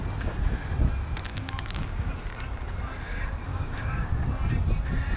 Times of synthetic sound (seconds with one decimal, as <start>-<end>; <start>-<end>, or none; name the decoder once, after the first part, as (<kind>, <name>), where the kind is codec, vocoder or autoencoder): 1.3-2.1 (codec, DAC); 3.5-4.1